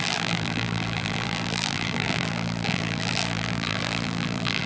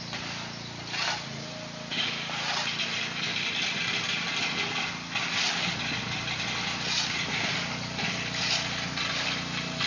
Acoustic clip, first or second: second